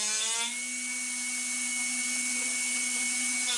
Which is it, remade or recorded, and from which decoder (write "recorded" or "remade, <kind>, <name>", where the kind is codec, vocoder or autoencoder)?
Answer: recorded